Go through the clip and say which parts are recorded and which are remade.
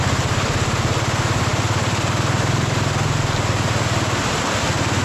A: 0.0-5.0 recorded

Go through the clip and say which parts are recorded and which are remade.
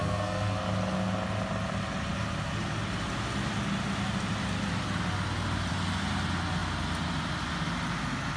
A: 0.0-0.6 remade; 0.6-8.4 recorded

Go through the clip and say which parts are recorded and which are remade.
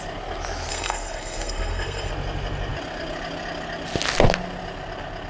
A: 0.0-0.7 recorded; 0.7-2.1 remade; 2.1-5.3 recorded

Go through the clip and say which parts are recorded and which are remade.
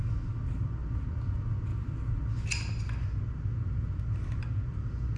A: 0.0-5.2 recorded